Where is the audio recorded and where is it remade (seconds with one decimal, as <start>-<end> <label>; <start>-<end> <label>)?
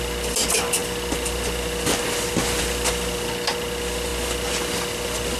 0.0-5.4 recorded